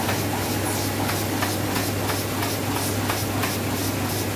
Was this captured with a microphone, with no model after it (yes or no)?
yes